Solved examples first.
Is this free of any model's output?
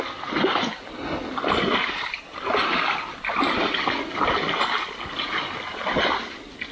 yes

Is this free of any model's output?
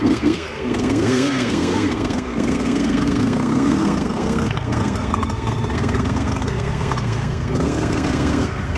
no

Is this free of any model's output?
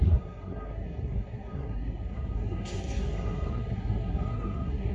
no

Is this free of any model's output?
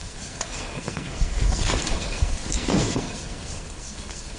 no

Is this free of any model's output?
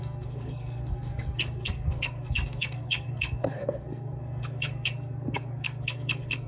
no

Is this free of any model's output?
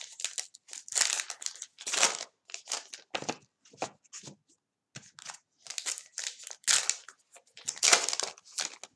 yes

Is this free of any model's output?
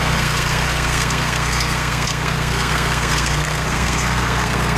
no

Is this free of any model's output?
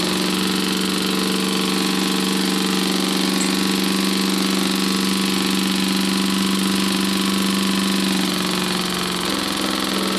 yes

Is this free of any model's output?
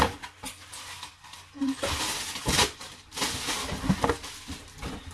yes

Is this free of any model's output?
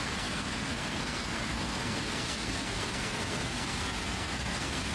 no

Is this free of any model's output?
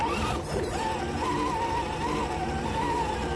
yes